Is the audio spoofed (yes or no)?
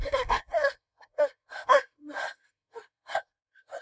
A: yes